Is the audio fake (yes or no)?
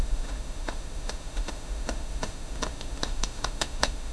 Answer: yes